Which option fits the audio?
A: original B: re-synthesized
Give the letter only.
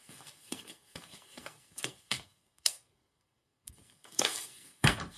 B